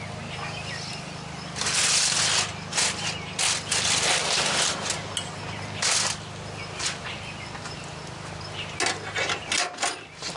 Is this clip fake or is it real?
real